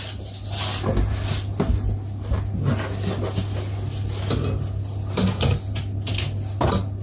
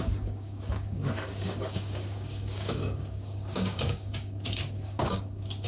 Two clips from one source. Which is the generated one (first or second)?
second